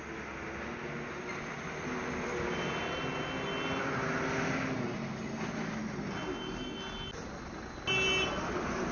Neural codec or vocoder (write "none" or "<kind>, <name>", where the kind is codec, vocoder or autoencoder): none